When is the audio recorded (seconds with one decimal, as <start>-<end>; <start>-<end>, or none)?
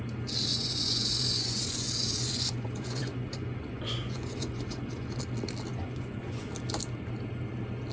0.0-0.5; 5.2-5.7; 6.5-7.9